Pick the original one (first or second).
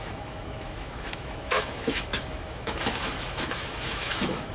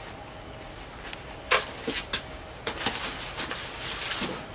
second